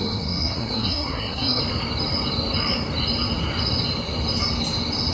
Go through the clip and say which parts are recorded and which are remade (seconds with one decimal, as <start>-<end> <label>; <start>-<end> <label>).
0.0-1.6 remade; 1.6-5.1 recorded